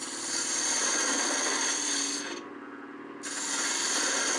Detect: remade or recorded recorded